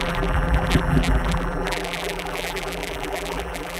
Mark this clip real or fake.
fake